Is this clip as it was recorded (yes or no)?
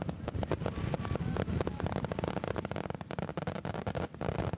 yes